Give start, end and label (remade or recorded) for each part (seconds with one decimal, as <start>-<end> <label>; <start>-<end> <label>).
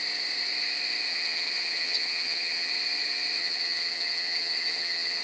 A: 0.0-1.1 recorded; 1.1-2.7 remade; 2.7-3.4 recorded; 3.4-5.2 remade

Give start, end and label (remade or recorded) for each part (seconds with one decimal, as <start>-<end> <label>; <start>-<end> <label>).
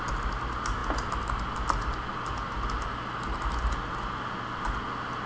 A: 0.0-5.3 recorded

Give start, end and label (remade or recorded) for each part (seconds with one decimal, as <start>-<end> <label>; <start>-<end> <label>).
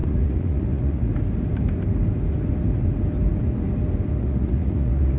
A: 0.0-1.1 remade; 1.1-4.2 recorded; 4.2-5.2 remade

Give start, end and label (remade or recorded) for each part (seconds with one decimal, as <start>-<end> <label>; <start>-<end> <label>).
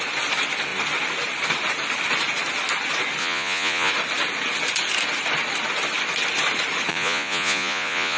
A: 0.0-3.2 recorded; 3.2-3.9 remade; 3.9-6.9 recorded; 6.9-8.2 remade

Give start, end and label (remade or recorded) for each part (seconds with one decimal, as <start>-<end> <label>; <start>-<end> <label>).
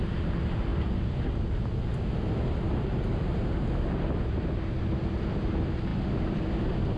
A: 0.0-7.0 recorded